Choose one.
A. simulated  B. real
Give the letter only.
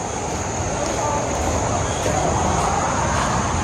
B